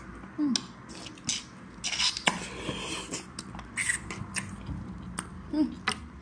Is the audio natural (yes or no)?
yes